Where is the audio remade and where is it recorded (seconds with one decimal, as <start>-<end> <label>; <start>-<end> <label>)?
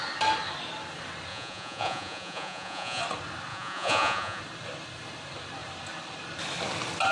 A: 0.0-1.3 recorded; 1.3-3.0 remade; 3.0-3.5 recorded; 3.5-4.4 remade; 4.4-7.1 recorded